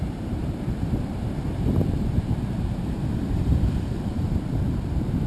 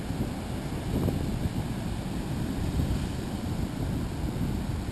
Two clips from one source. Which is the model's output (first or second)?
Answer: first